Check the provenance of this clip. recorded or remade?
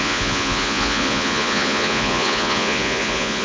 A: remade